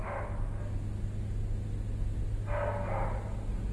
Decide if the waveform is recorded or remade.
recorded